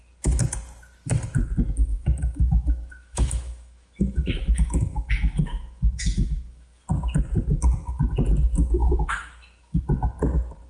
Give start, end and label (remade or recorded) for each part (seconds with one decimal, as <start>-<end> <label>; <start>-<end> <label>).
0.0-1.9 recorded; 1.9-6.8 remade; 6.8-8.8 recorded; 8.8-9.8 remade; 9.8-10.7 recorded